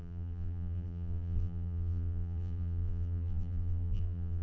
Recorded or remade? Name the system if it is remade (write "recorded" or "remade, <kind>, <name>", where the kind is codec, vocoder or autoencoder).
remade, vocoder, BigVGAN v2